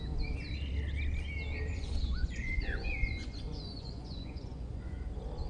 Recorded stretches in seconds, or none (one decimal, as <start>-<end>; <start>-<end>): 0.0-1.7; 5.0-5.5